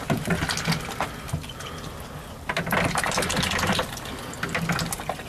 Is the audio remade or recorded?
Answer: recorded